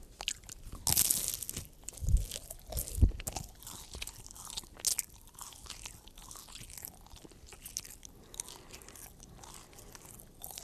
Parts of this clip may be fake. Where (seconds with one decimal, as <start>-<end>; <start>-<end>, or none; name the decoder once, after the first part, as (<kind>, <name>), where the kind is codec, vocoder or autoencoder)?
none